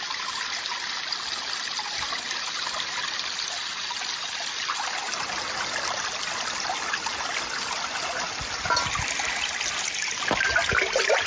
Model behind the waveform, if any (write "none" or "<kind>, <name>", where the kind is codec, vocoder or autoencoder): none